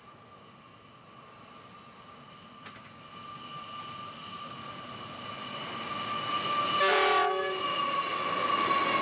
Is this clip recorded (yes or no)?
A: yes